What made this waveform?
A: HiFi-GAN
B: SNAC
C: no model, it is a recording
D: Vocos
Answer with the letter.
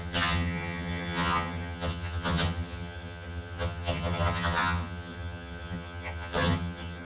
A